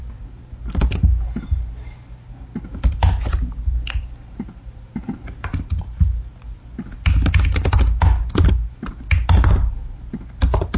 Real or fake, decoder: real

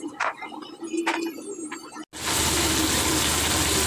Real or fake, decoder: real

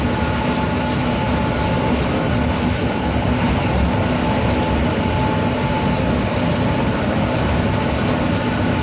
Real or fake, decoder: real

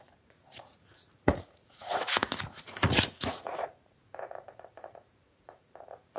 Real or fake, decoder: fake, vocoder, Vocos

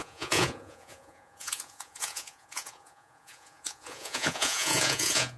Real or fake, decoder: fake, vocoder, Vocos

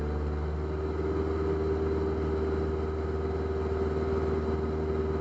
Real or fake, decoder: real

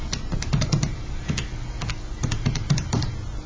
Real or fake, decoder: real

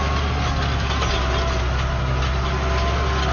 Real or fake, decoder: real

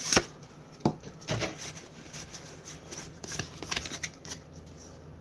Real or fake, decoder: real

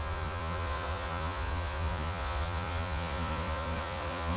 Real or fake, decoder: fake, vocoder, Vocos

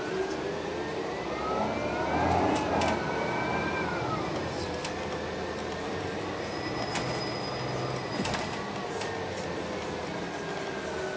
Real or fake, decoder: real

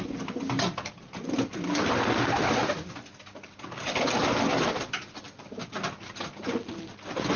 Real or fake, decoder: real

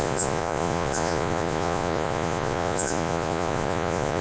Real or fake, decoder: fake, vocoder, Vocos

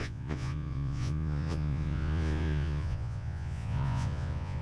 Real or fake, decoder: fake, vocoder, Vocos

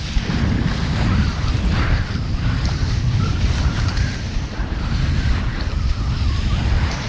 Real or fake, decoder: real